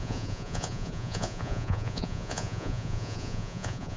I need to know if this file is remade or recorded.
remade